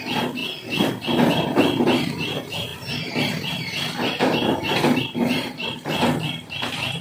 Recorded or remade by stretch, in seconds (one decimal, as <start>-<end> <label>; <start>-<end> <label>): 0.0-0.4 remade; 0.4-1.3 recorded; 1.3-7.0 remade